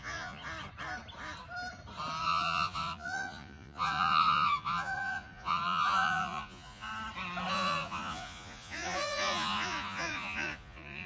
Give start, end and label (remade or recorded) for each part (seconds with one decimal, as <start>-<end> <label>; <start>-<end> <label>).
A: 0.0-0.4 remade; 0.4-2.2 recorded; 2.2-6.9 remade; 6.9-7.5 recorded; 7.5-11.1 remade